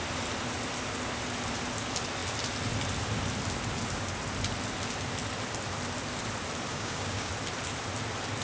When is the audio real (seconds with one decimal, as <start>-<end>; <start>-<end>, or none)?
0.0-6.7; 7.3-8.4